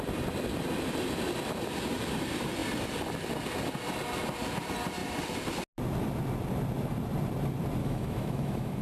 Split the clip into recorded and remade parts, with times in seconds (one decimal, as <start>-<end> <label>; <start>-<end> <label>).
0.0-7.8 recorded; 7.8-8.8 remade